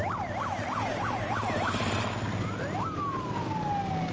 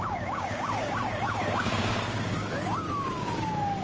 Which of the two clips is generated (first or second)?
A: second